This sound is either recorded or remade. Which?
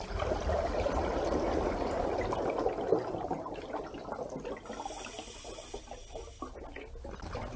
recorded